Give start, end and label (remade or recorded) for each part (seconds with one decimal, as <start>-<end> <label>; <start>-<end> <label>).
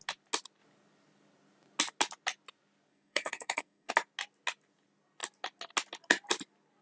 0.0-2.9 recorded; 2.9-3.9 remade; 3.9-6.8 recorded